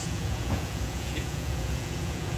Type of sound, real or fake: fake